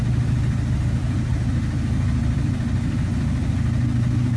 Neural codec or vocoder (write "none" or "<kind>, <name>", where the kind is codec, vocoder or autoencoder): none